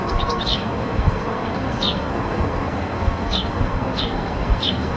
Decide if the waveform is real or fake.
fake